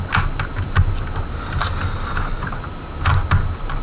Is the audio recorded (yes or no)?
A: yes